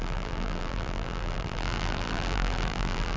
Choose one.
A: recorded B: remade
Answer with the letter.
B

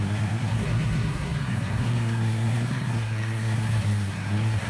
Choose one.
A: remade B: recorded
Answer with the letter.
A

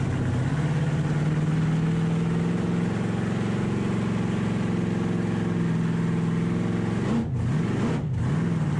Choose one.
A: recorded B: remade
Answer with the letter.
A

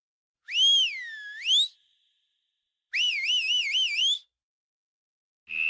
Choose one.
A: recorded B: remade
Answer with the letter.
A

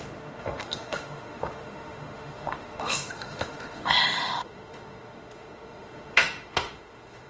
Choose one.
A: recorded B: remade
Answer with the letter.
B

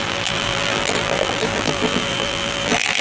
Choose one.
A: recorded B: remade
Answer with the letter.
B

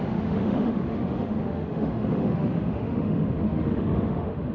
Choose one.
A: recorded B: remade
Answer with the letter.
B